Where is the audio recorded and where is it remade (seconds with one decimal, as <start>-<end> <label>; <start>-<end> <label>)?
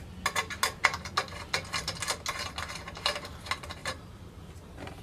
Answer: 0.0-3.8 recorded; 3.8-5.0 remade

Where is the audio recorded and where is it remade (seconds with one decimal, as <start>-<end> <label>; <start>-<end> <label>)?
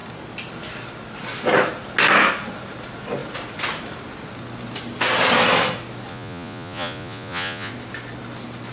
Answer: 0.0-6.1 recorded; 6.1-7.7 remade; 7.7-8.7 recorded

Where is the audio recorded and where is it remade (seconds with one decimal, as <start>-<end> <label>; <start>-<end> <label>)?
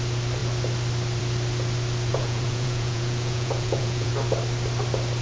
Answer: 0.0-2.1 recorded; 2.1-4.1 remade; 4.1-5.2 recorded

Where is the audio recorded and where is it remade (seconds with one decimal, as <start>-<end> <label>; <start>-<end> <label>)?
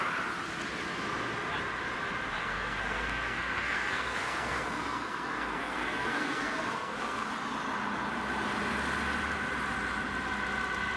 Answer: 0.0-2.4 recorded; 2.4-7.3 remade; 7.3-11.0 recorded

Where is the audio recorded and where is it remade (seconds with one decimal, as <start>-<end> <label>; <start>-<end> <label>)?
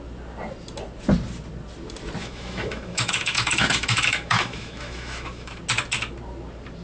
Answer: 0.0-2.2 recorded; 2.2-5.6 remade; 5.6-6.8 recorded